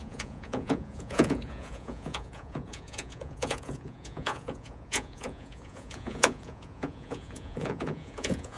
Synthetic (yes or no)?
yes